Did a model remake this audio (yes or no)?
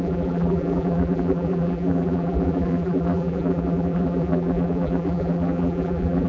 yes